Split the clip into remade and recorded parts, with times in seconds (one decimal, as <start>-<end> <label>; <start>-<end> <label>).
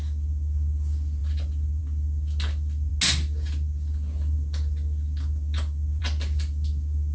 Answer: 0.0-7.1 recorded